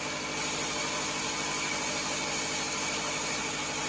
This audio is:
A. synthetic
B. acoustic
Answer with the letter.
B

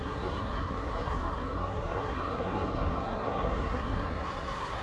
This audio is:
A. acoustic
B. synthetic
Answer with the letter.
B